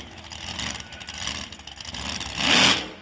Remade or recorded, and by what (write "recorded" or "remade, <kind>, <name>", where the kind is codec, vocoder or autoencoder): recorded